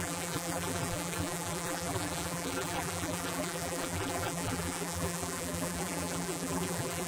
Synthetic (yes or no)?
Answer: yes